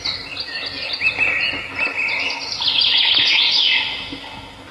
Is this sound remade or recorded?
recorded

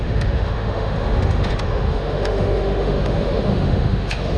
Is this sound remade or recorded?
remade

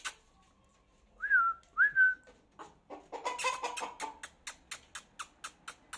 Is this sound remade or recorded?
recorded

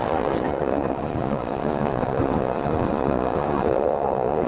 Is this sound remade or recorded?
remade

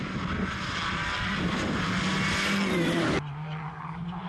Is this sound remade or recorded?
recorded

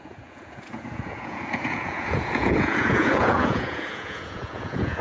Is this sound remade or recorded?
remade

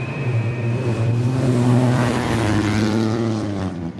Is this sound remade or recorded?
remade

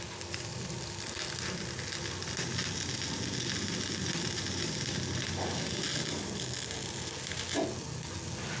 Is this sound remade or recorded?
recorded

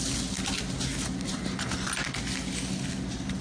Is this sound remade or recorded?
recorded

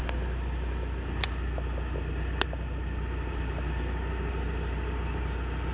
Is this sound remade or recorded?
recorded